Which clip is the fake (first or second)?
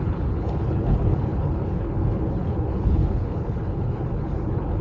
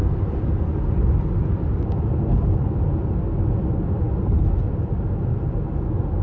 first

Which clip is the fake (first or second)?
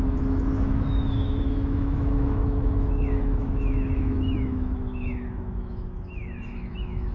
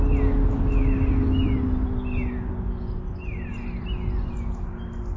first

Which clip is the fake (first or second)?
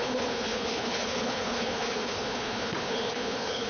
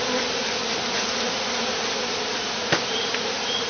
first